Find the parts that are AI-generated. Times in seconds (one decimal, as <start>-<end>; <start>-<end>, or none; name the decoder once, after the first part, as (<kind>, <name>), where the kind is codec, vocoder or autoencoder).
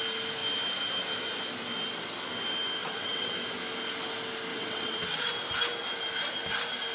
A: 2.8-3.3 (vocoder, WaveNeXt); 4.5-5.3